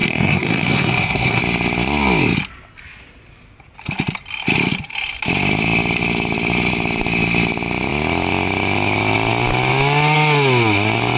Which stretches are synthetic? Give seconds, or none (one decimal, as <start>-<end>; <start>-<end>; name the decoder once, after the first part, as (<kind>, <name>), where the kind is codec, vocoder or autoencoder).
0.0-1.4 (codec, SNAC)